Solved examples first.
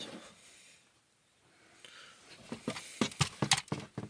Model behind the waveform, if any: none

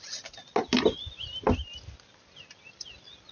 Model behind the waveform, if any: none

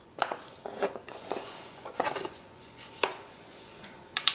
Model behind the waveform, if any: vocoder, Vocos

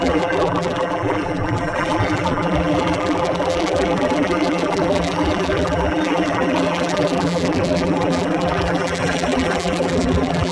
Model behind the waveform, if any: vocoder, BigVGAN v2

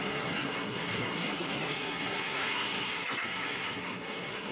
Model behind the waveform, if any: codec, SNAC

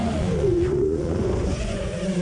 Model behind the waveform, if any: vocoder, Vocos